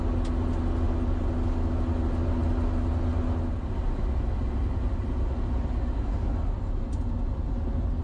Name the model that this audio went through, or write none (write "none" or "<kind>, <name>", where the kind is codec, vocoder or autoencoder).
none